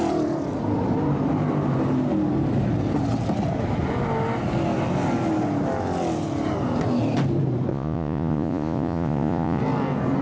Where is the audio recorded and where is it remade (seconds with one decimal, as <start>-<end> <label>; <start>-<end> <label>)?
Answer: 0.0-7.7 recorded; 7.7-9.6 remade; 9.6-10.2 recorded

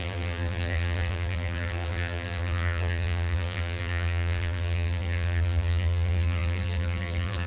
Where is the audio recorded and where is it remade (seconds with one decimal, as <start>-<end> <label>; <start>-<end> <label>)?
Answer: 0.0-7.5 remade

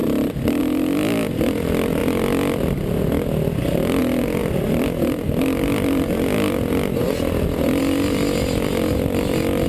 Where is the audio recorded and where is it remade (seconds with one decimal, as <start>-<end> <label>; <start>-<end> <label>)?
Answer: 0.0-9.7 recorded

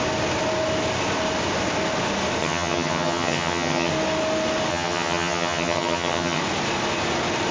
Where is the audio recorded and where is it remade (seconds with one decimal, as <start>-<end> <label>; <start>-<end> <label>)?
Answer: 0.0-2.4 recorded; 2.4-3.9 remade; 3.9-4.7 recorded; 4.7-6.4 remade; 6.4-7.5 recorded